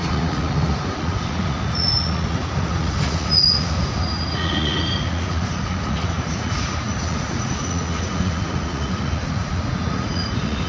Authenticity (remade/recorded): remade